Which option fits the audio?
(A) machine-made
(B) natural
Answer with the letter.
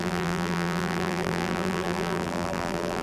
A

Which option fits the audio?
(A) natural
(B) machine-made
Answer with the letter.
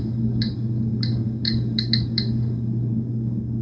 B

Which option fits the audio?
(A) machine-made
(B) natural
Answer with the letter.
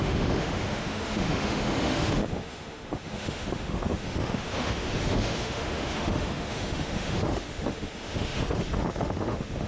A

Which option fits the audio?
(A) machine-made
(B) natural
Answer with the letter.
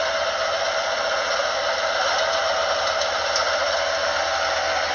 B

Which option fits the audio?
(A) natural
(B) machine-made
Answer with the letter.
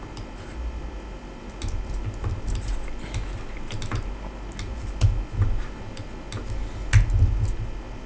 A